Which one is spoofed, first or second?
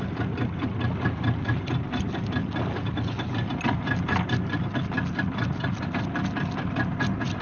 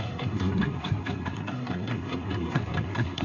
second